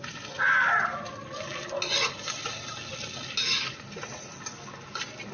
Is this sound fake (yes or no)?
no